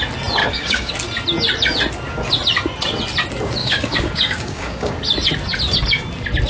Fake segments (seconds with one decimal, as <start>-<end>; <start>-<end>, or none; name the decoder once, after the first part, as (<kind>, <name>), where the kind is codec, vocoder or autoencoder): 0.4-0.9 (codec, DAC); 3.6-5.0

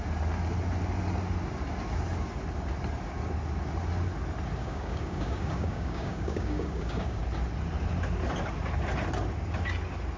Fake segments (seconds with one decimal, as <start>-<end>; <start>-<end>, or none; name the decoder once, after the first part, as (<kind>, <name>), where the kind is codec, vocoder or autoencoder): 4.6-7.2 (codec, DAC)

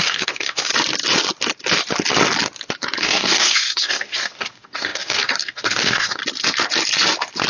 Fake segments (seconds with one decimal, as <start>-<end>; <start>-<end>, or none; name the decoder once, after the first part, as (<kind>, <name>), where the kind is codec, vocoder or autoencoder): 0.0-0.7 (codec, DAC); 3.0-6.2

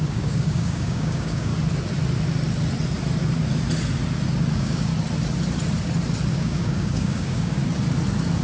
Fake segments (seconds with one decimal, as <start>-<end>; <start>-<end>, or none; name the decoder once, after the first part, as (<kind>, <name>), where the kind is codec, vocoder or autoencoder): 0.0-1.5 (codec, DAC); 4.5-4.9; 6.3-7.6

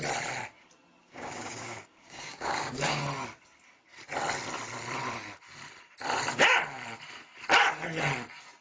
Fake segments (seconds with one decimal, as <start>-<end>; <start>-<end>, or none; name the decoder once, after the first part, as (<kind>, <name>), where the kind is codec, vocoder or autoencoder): 1.0-3.0 (codec, DAC)

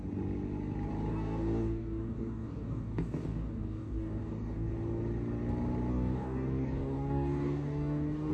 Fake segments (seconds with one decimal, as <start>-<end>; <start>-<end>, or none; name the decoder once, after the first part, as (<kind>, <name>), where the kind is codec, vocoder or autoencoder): 1.1-4.7 (codec, DAC); 5.9-8.3

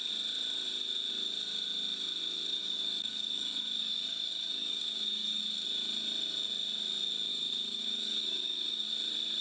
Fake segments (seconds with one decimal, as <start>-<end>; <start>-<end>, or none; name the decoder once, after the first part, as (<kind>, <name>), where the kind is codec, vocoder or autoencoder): 2.6-5.4 (codec, DAC); 7.3-8.9

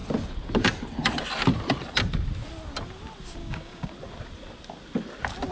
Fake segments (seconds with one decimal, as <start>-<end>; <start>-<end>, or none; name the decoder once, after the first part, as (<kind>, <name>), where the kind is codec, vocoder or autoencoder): 3.4-3.9 (codec, DAC)